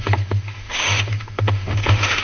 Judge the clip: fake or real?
fake